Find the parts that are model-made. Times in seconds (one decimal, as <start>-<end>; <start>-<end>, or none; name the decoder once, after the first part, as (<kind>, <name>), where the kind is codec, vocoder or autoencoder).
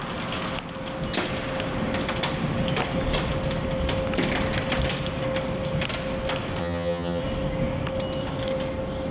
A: 6.6-7.2 (vocoder, HiFi-GAN)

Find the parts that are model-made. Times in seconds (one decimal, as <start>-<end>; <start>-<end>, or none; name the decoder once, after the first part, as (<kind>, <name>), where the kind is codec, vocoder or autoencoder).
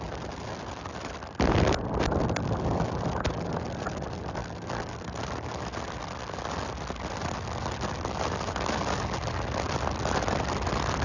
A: none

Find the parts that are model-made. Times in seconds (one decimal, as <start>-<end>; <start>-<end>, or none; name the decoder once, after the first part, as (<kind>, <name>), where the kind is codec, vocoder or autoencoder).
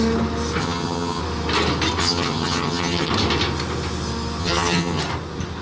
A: 0.6-1.2 (vocoder, HiFi-GAN); 2.0-3.1; 4.4-5.0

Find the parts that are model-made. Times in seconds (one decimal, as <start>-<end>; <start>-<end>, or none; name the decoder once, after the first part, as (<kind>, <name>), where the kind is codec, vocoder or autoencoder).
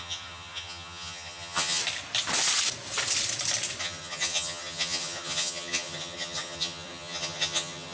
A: 0.0-1.8 (vocoder, HiFi-GAN); 3.8-7.9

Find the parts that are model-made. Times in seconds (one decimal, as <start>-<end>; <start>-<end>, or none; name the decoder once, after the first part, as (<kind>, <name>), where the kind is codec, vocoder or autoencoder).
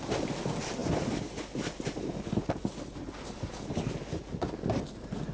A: none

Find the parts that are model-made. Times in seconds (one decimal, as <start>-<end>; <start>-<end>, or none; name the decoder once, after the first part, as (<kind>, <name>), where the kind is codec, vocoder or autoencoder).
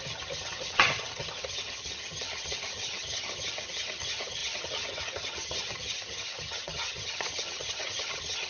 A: 0.0-8.5 (vocoder, HiFi-GAN)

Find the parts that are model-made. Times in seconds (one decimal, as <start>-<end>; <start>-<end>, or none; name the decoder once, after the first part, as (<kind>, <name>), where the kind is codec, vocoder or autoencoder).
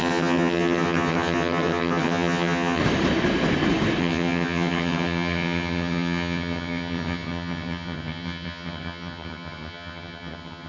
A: 0.0-2.8 (vocoder, HiFi-GAN); 4.0-10.7